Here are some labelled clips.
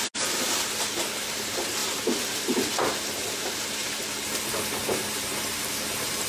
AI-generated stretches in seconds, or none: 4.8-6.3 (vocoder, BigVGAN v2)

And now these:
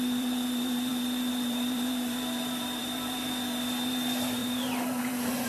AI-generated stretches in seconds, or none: 0.0-5.5 (vocoder, BigVGAN v2)

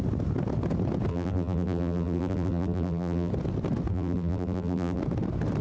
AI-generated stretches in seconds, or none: 1.1-3.3 (vocoder, BigVGAN v2); 3.9-5.0

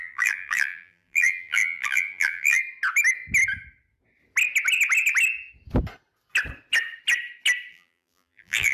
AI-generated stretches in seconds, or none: 0.0-2.6 (vocoder, BigVGAN v2); 7.7-8.7

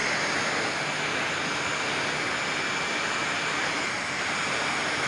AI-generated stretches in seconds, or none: 3.2-4.1 (vocoder, BigVGAN v2)

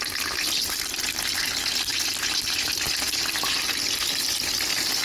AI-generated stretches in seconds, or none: none

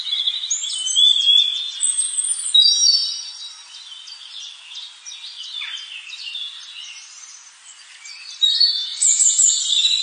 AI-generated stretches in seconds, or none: 8.9-10.0 (vocoder, BigVGAN v2)

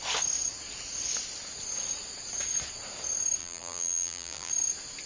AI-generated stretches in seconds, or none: 3.4-4.5 (vocoder, BigVGAN v2)